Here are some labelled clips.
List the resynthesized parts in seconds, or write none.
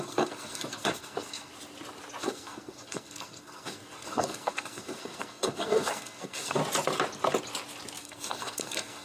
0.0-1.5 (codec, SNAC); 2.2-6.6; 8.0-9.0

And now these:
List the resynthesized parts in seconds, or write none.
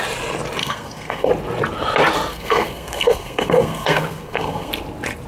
0.6-1.3 (codec, SNAC); 2.3-4.7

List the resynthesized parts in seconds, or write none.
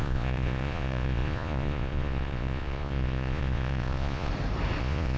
0.0-4.3 (vocoder, Vocos); 4.8-5.2